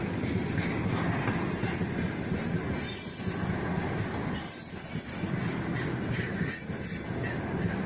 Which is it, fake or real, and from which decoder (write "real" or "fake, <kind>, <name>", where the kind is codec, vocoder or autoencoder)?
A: real